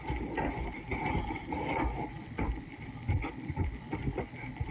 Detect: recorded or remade recorded